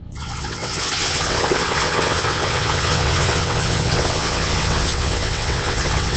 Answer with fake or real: fake